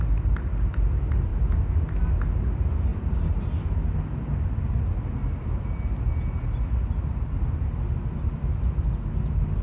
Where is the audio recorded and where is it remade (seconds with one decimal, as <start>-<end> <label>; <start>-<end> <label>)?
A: 0.0-9.6 recorded